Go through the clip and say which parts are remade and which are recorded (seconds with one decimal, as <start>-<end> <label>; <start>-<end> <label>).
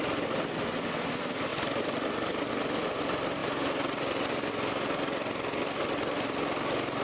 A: 0.0-7.0 recorded